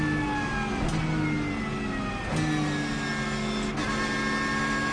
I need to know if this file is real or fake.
real